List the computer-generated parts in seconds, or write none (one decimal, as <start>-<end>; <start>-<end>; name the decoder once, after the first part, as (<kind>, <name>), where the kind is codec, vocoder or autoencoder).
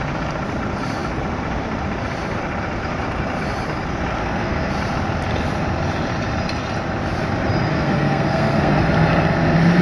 4.2-4.7 (codec, SNAC); 7.7-8.8